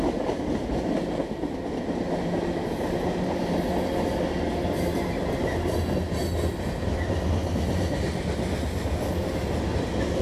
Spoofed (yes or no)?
no